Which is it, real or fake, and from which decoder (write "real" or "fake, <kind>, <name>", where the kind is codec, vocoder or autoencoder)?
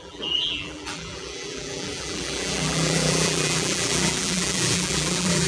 fake, vocoder, BigVGAN v2